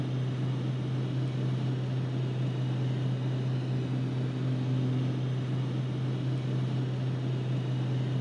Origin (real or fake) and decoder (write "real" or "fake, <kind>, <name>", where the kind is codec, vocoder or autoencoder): real